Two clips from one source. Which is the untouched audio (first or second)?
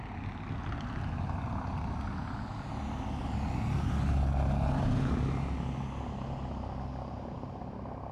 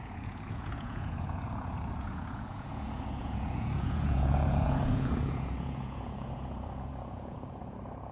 first